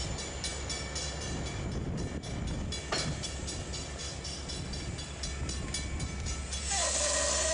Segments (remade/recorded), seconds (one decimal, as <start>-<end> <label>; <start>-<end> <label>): 0.0-7.5 recorded